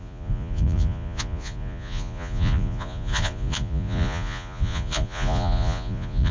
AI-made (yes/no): yes